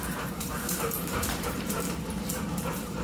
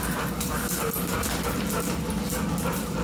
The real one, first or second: second